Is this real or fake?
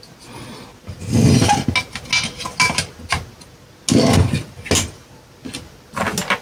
real